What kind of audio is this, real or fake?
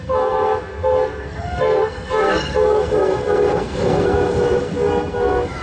fake